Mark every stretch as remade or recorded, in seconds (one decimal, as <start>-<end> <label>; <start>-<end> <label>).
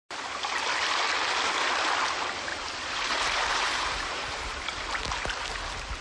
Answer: 0.0-2.5 recorded; 2.5-4.9 remade; 4.9-6.0 recorded